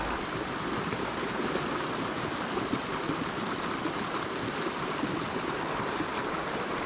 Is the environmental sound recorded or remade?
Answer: recorded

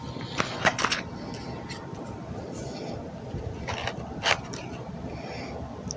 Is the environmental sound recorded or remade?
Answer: recorded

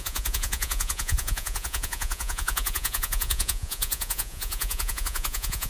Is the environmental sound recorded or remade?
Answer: remade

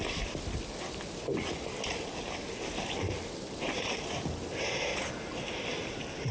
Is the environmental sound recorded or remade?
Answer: recorded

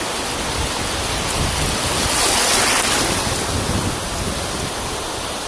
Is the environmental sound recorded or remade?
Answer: recorded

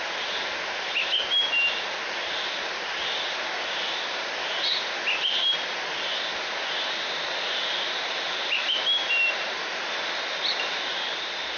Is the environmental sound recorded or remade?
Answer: recorded